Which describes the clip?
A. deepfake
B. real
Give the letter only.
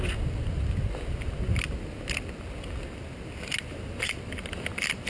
B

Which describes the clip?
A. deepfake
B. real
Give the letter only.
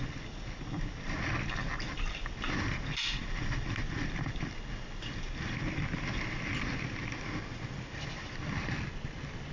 B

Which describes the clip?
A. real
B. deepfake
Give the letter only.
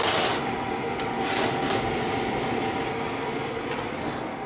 A